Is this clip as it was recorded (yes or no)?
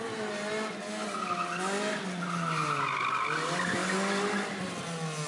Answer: yes